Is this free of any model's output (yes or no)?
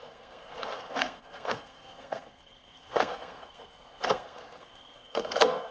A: no